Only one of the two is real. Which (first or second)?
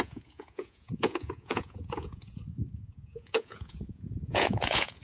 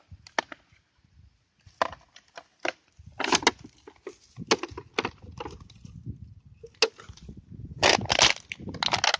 second